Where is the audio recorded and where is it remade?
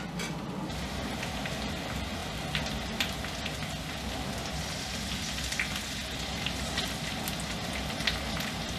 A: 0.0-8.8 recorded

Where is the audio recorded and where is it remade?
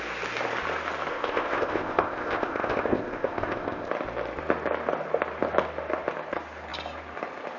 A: 0.0-1.1 recorded; 1.1-3.9 remade; 3.9-7.6 recorded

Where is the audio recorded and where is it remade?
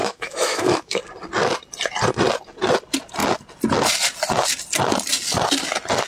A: 0.0-1.0 remade; 1.0-6.1 recorded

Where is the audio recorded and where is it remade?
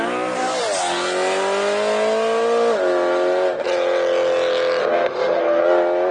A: 0.0-4.8 recorded; 4.8-5.6 remade; 5.6-6.1 recorded